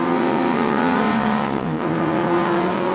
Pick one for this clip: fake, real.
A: fake